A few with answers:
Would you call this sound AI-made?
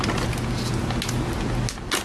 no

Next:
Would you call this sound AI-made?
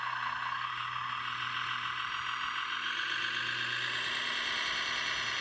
no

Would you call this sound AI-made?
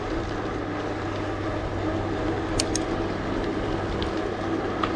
no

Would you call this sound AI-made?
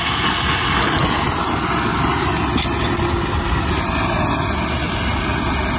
no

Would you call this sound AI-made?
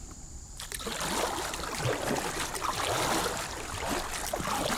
no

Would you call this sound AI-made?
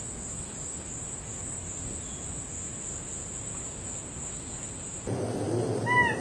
no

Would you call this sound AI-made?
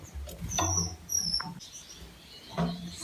no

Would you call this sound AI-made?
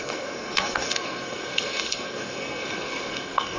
yes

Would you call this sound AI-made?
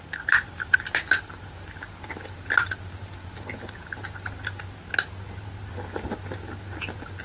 no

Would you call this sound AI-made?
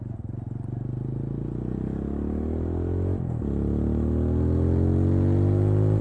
no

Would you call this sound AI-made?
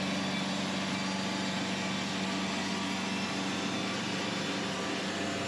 no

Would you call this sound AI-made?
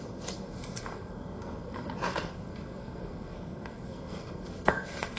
yes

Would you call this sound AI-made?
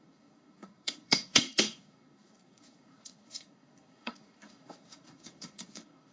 yes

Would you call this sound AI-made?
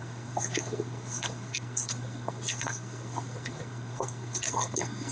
yes